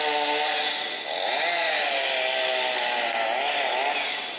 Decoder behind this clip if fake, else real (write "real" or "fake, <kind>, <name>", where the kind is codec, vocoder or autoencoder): real